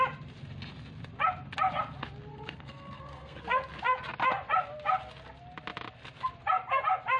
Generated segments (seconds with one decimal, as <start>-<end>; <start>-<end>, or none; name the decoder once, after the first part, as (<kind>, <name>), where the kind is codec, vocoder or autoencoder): 2.3-3.4 (codec, SNAC)